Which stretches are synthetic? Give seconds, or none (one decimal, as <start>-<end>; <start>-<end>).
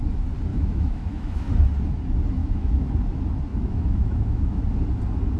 0.5-1.5; 2.4-2.9; 3.5-4.6